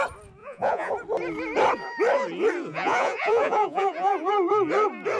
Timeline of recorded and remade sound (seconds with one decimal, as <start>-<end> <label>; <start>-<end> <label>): 0.0-0.4 recorded; 0.4-0.9 remade; 0.9-2.7 recorded; 2.7-4.3 remade; 4.3-5.2 recorded